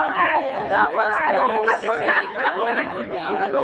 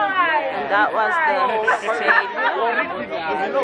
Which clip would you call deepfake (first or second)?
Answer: first